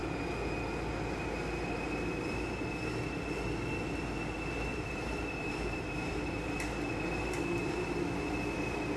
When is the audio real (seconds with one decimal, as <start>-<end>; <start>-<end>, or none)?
0.0-4.7; 6.5-9.0